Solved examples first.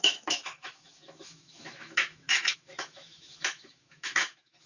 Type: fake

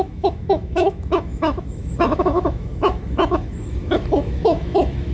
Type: fake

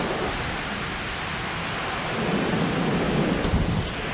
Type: real